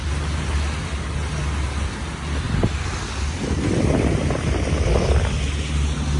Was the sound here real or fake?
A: real